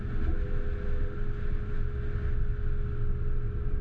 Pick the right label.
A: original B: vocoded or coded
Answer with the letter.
A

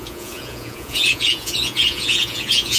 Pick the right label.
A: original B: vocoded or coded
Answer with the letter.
B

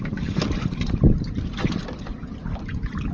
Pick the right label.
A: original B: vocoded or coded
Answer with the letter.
A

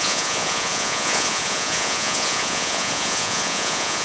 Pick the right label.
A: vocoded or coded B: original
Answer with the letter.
A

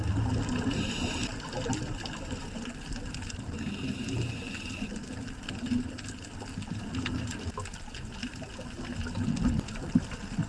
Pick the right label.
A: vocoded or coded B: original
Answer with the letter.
B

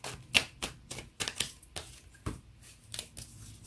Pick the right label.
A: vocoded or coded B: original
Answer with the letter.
B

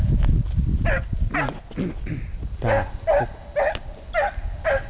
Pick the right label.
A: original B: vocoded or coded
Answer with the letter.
A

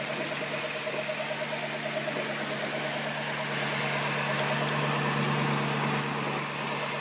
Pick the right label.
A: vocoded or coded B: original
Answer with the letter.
B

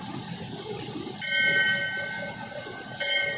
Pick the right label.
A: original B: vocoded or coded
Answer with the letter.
A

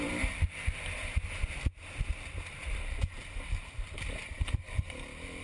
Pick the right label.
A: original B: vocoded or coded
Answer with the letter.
A